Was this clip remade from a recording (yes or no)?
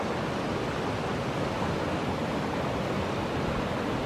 no